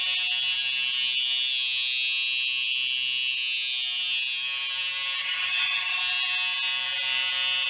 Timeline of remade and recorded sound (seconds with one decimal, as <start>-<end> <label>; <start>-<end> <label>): 0.0-5.2 recorded; 5.2-6.0 remade; 6.0-7.7 recorded